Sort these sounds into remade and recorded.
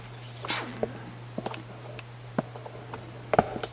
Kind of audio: recorded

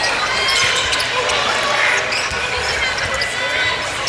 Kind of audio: recorded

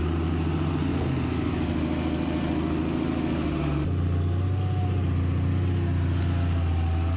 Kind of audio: recorded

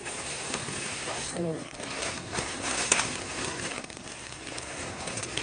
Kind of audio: remade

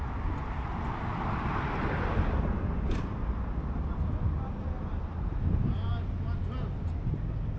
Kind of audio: recorded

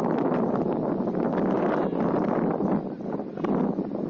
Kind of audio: recorded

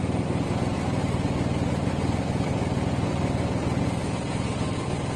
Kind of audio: recorded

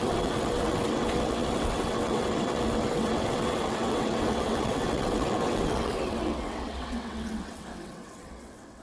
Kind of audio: remade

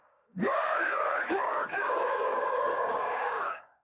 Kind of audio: remade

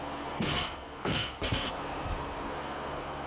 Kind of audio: remade